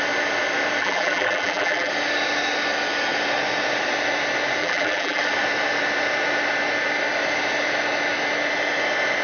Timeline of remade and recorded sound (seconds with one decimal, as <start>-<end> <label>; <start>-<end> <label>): 0.0-0.8 recorded; 0.8-1.9 remade; 1.9-4.6 recorded; 4.6-5.2 remade; 5.2-9.2 recorded